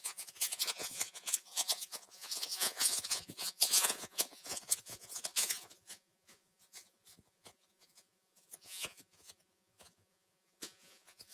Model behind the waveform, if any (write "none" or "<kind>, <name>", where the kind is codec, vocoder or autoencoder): vocoder, Vocos